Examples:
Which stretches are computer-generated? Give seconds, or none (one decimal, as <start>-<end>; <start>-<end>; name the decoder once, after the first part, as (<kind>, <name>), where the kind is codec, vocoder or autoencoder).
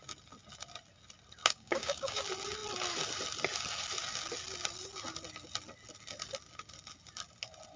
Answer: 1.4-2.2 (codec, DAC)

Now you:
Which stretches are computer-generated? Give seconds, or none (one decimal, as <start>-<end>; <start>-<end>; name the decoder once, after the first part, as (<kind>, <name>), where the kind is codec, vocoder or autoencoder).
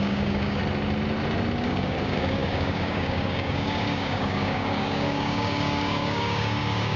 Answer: 0.0-0.6 (codec, DAC); 1.6-7.0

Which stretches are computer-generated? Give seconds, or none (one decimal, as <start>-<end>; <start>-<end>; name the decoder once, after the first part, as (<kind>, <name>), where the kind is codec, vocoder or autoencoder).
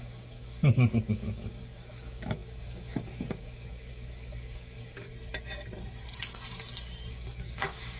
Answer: 0.0-5.1 (codec, DAC); 7.1-8.0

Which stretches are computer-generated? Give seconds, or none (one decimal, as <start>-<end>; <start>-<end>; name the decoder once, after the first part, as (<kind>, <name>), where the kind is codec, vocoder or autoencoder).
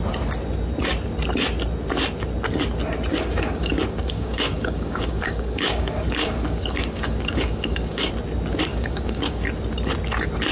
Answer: 3.1-8.1 (codec, DAC); 8.7-9.4